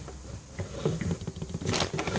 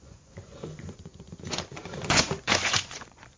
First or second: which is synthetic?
second